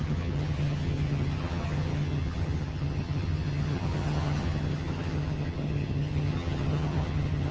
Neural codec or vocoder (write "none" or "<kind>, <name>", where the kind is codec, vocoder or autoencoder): vocoder, HiFi-GAN